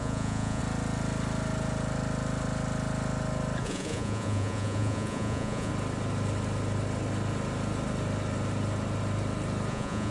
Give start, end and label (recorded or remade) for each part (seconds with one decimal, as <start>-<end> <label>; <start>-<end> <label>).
0.0-0.6 remade; 0.6-3.6 recorded; 3.6-5.7 remade; 5.7-9.7 recorded; 9.7-10.1 remade